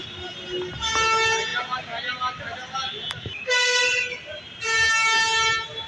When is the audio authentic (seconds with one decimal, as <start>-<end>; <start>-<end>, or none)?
0.0-5.9